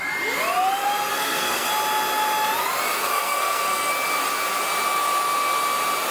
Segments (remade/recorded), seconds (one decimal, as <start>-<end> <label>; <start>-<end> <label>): 0.0-1.1 recorded; 1.1-1.7 remade; 1.7-3.0 recorded; 3.0-3.9 remade; 3.9-6.1 recorded